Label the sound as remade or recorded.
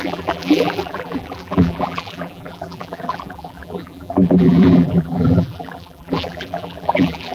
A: remade